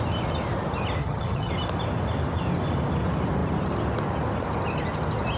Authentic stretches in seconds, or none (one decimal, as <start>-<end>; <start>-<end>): 0.0-1.0; 1.5-5.4